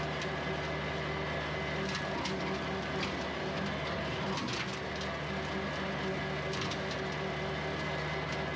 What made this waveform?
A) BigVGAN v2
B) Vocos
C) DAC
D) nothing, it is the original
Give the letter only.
D